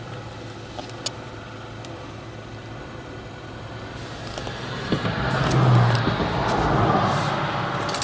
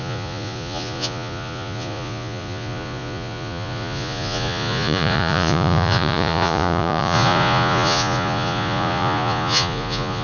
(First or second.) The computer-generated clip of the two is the second